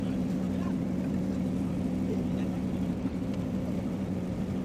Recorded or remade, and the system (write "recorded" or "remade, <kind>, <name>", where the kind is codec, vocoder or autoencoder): recorded